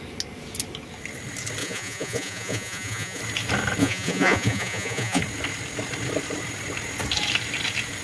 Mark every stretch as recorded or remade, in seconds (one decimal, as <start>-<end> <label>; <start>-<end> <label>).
0.0-1.6 recorded; 1.6-3.2 remade; 3.2-3.8 recorded; 3.8-5.2 remade; 5.2-8.0 recorded